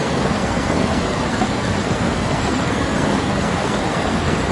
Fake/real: fake